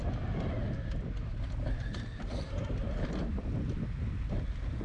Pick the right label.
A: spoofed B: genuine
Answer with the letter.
A